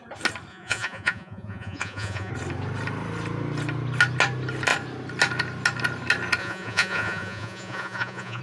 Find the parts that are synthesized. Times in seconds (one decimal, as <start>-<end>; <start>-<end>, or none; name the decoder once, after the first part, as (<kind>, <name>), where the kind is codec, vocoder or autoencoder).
0.5-2.3 (vocoder, Vocos); 6.4-8.4